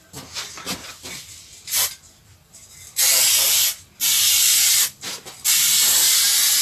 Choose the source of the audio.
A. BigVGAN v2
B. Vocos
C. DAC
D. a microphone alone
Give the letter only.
D